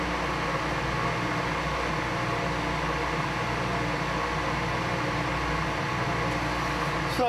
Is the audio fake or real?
real